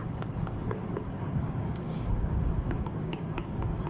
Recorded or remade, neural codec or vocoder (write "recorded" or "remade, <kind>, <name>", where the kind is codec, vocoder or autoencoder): remade, codec, DAC